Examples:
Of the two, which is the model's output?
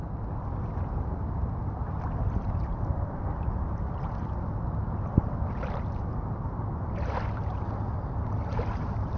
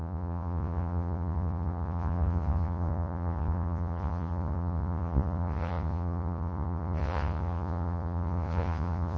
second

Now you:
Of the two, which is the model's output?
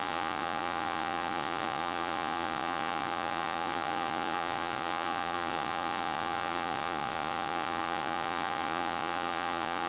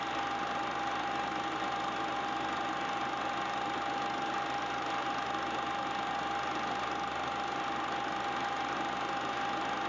first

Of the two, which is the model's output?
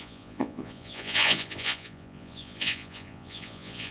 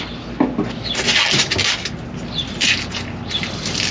first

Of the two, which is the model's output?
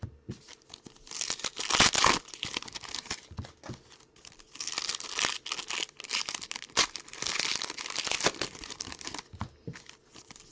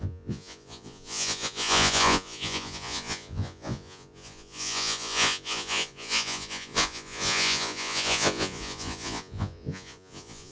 second